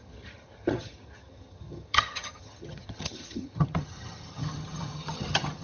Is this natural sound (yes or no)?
no